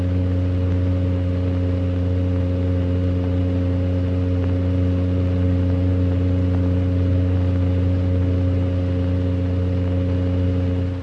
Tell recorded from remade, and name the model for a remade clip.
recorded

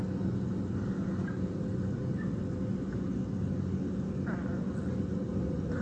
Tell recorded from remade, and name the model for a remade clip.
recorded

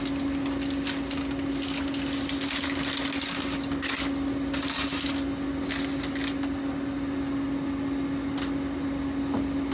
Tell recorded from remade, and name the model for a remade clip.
recorded